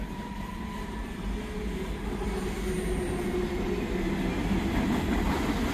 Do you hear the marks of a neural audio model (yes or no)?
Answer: no